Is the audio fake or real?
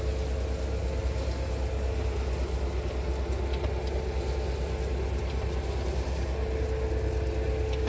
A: real